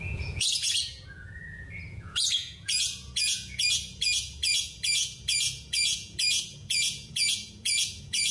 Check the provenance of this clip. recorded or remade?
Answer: remade